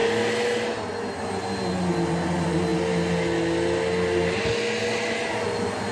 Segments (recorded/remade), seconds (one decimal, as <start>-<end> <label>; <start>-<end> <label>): 0.0-5.9 recorded